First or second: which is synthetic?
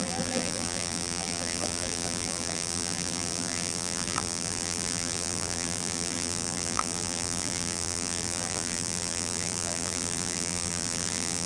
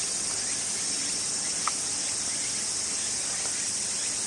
first